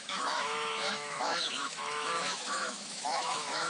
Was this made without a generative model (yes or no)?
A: no